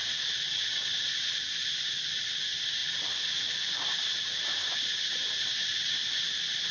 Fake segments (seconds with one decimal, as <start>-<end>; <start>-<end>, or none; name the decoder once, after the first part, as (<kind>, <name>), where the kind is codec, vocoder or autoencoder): none